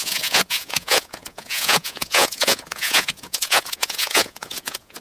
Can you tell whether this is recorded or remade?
remade